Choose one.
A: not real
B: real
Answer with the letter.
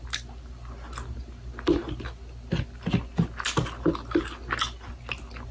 B